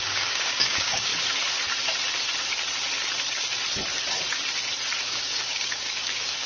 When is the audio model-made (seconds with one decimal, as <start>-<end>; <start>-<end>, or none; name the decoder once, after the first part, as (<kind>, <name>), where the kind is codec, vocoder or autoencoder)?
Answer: 0.0-1.1 (codec, DAC); 5.0-6.5